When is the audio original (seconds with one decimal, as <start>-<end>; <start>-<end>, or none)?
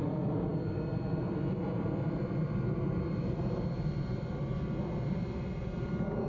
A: 0.0-6.3